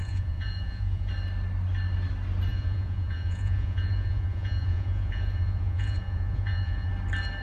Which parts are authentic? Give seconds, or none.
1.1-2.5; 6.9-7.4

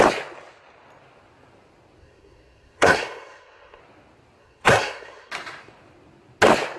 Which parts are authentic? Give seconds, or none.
0.0-2.0; 3.8-4.4; 5.3-6.8

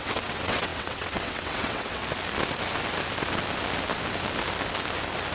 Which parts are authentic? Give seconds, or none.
2.0-5.3

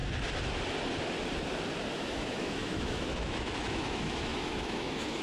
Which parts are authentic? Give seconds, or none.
0.0-1.9

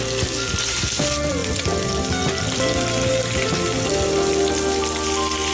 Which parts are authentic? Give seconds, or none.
0.0-5.5

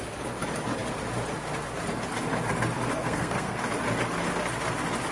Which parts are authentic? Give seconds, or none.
0.0-3.0; 3.6-5.1

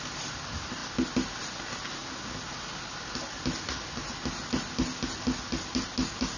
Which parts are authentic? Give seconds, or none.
0.0-6.4

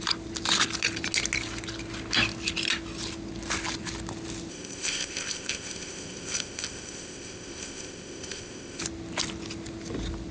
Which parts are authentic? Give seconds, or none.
0.0-4.5; 8.8-10.3